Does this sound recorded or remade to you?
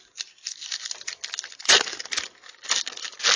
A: recorded